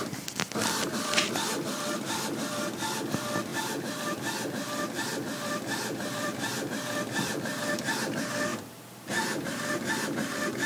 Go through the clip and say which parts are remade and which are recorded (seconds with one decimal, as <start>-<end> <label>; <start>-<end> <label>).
0.0-8.5 remade; 8.5-9.1 recorded; 9.1-10.7 remade